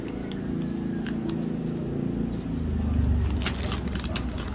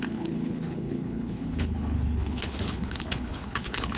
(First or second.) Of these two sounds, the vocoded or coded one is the second